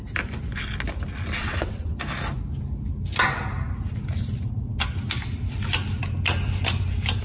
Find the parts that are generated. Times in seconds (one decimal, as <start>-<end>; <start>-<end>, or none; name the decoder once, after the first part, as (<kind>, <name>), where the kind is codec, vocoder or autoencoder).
1.4-2.0 (vocoder, WaveNeXt)

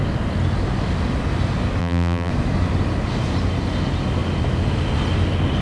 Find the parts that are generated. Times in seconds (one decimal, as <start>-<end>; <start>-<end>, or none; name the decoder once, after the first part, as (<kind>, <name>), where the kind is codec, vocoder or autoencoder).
1.8-2.3 (vocoder, BigVGAN v2)

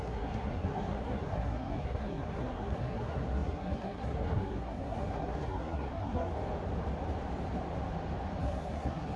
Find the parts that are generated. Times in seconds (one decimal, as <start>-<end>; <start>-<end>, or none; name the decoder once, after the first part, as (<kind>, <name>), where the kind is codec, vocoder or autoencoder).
0.0-6.3 (codec, SNAC); 8.4-9.2